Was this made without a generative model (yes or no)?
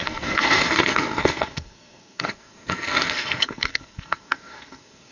no